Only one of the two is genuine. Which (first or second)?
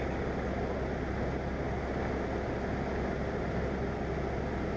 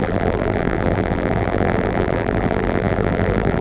first